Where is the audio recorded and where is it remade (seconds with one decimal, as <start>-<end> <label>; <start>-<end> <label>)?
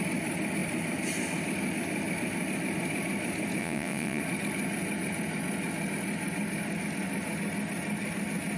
0.0-3.6 recorded; 3.6-4.2 remade; 4.2-8.6 recorded